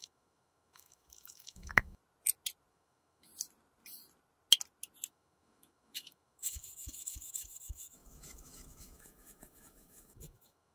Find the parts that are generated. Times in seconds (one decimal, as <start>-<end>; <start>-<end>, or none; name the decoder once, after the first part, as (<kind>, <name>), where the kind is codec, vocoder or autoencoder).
0.0-2.0 (autoencoder, DAC-VAE); 2.7-3.3; 5.1-10.7

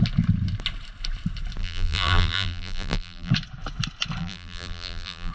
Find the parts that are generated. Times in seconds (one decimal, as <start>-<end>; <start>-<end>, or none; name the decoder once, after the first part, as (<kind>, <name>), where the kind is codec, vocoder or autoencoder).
1.6-3.3 (vocoder, BigVGAN v2); 4.2-5.3

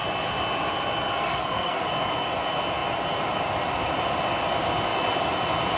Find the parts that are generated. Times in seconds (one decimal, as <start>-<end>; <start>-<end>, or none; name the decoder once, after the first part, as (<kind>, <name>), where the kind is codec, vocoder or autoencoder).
1.2-1.8 (codec, SNAC)